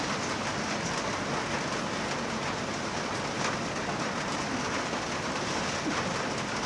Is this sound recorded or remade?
recorded